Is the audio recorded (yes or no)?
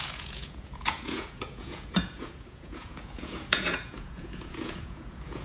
no